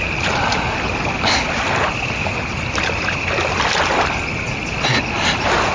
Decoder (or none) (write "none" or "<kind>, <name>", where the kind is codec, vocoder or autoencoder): none